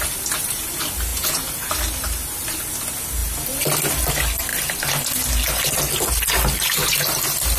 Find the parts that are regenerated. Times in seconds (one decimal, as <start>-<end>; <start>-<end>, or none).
1.1-1.7